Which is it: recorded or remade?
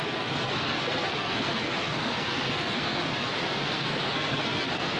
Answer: remade